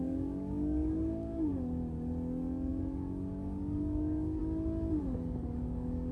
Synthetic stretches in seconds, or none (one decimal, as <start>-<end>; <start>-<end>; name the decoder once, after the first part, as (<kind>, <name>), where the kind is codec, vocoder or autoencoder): 0.0-1.5 (codec, DAC); 2.7-4.4; 5.0-6.1